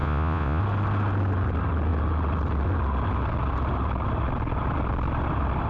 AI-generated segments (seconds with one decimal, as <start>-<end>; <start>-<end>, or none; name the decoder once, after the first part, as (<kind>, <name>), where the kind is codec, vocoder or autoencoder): 0.0-0.6 (vocoder, Vocos)